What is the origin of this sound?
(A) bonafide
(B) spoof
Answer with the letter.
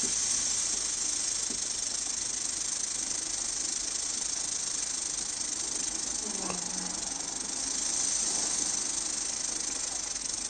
A